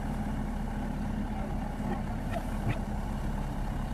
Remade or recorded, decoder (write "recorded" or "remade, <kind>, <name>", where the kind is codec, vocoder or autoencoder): recorded